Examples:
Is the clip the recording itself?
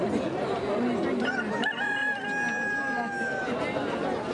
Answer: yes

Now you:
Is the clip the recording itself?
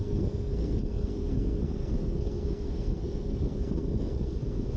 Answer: no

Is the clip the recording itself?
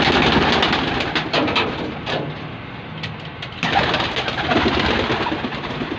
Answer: yes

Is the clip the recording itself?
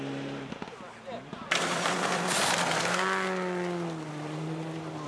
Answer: yes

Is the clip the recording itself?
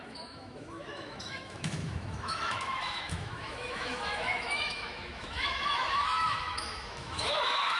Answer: no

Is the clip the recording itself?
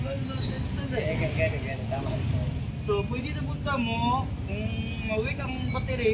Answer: yes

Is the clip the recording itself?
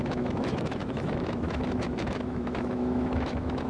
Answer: no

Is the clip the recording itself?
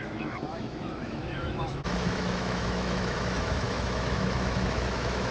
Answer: no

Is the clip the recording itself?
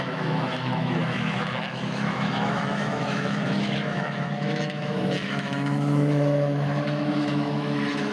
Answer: no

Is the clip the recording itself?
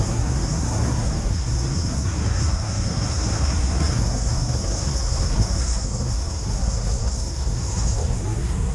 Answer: no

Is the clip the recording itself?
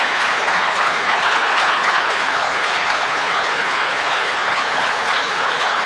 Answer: no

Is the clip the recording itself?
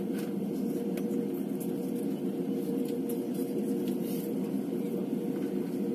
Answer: yes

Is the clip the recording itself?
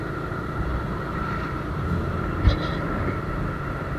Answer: no